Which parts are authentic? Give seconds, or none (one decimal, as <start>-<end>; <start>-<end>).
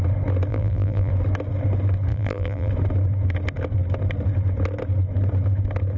0.0-0.5; 1.1-2.1; 2.7-6.0